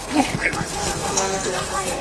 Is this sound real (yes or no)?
no